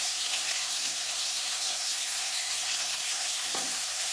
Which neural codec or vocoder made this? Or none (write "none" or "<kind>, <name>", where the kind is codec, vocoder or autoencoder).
codec, SNAC